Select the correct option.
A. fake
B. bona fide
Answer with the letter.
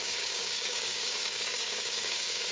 A